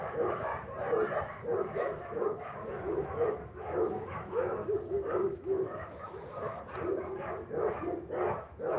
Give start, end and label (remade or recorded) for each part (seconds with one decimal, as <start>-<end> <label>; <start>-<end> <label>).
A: 0.0-0.5 remade; 0.5-1.2 recorded; 1.2-6.5 remade; 6.5-8.4 recorded; 8.4-8.8 remade